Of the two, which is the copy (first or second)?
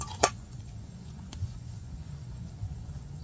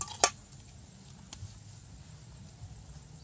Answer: first